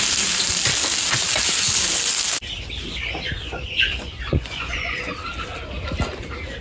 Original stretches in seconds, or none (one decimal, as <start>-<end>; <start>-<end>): 0.0-3.4; 5.1-6.6